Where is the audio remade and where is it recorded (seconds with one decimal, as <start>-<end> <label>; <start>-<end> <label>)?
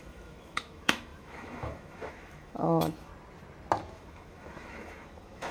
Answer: 0.0-3.1 remade; 3.1-3.9 recorded; 3.9-5.5 remade